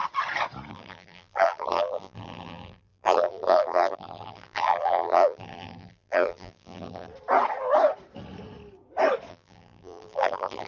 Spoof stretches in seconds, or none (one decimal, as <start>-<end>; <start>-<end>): 0.7-7.1; 9.3-10.7